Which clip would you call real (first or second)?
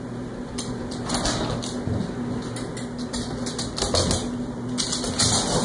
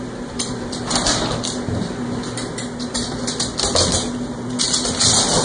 first